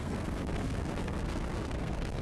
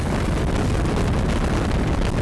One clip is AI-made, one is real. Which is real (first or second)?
second